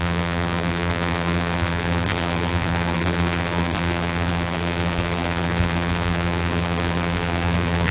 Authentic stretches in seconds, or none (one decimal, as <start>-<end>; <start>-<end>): none